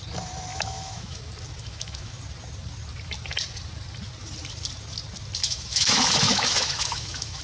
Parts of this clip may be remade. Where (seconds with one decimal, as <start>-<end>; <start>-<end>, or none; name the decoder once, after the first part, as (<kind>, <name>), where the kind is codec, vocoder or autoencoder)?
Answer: 0.5-1.2 (autoencoder, DAC-VAE); 1.6-2.2; 5.4-7.4